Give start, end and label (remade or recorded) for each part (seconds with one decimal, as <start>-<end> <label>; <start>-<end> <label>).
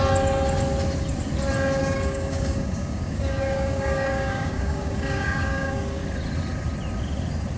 0.0-1.8 recorded; 1.8-6.0 remade; 6.0-7.6 recorded